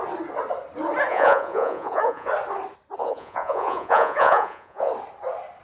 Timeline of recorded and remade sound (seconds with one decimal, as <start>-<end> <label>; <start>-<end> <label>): 0.0-1.1 recorded; 1.1-2.3 remade; 2.3-3.0 recorded; 3.0-4.9 remade; 4.9-5.6 recorded